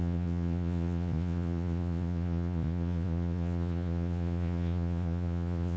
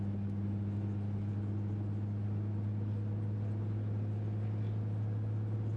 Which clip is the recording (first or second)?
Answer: second